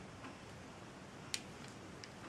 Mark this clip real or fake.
real